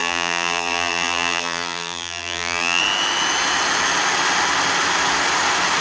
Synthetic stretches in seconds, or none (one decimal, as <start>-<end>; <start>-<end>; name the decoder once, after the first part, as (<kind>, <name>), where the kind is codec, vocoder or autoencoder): 0.0-2.8 (vocoder, BigVGAN v2)